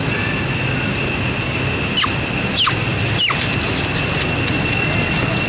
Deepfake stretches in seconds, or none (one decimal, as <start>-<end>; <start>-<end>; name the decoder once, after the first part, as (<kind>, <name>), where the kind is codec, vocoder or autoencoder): none